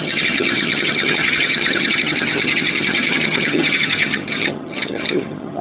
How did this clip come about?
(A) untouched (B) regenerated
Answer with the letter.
B